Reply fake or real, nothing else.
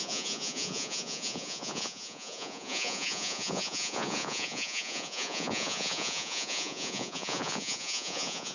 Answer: fake